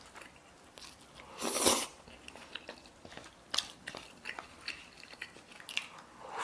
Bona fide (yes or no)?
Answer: yes